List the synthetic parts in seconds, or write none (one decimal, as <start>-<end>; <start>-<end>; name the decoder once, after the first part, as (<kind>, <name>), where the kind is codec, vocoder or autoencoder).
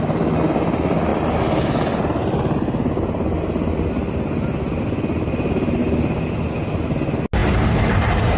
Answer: none